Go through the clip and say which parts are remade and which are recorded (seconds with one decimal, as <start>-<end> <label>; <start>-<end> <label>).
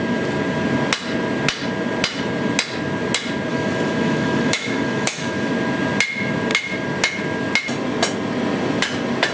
0.0-3.5 recorded; 3.5-5.5 remade; 5.5-9.3 recorded